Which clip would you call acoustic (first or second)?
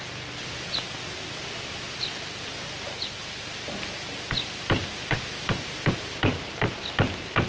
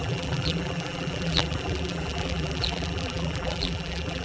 first